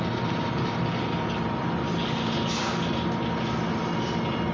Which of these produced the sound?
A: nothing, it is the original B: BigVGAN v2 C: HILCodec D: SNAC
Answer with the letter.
A